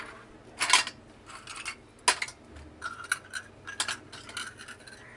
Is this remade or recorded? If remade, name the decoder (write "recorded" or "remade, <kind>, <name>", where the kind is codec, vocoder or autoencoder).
recorded